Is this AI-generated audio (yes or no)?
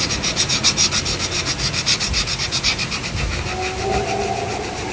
no